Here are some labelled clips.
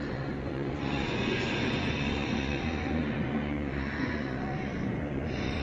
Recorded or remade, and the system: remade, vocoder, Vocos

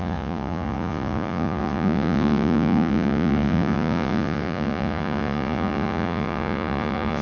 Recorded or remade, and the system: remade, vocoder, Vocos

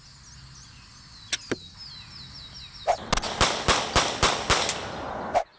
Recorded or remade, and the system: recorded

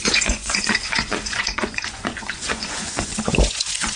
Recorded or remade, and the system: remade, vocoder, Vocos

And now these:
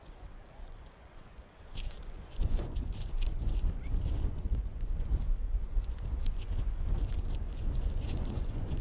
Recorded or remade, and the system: remade, vocoder, Vocos